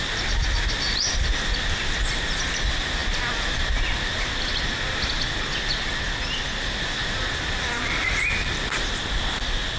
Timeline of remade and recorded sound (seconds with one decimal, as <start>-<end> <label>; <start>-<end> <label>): 0.0-9.8 recorded